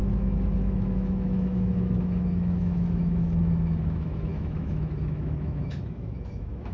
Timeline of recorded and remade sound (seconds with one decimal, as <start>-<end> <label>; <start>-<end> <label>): 0.0-6.7 remade